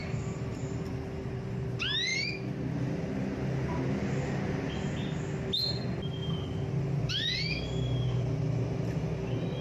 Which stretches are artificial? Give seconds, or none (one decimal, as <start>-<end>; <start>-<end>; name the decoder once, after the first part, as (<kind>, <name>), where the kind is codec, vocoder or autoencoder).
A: 0.0-0.9 (vocoder, BigVGAN v2); 2.1-2.7